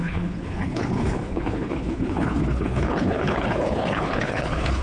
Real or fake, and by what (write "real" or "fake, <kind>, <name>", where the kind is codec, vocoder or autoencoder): fake, codec, HILCodec